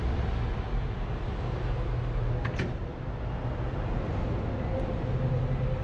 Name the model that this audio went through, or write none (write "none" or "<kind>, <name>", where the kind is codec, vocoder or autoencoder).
none